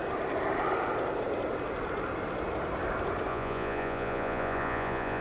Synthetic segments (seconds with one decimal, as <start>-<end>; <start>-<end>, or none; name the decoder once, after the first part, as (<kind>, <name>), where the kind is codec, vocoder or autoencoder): 3.3-5.2 (vocoder, Vocos)